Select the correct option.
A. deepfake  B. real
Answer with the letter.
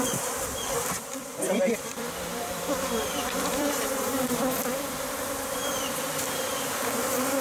A